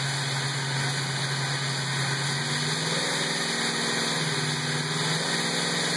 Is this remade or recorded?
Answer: recorded